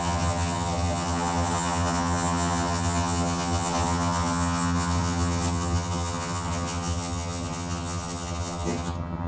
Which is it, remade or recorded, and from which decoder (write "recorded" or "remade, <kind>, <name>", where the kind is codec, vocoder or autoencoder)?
remade, vocoder, HiFi-GAN